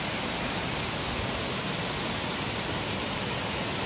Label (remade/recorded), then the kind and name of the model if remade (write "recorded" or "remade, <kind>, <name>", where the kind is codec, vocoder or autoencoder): recorded